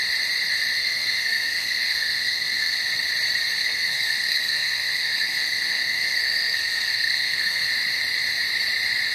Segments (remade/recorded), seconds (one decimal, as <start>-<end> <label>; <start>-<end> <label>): 0.0-0.8 recorded; 0.8-2.8 remade; 2.8-3.6 recorded; 3.6-7.7 remade; 7.7-9.1 recorded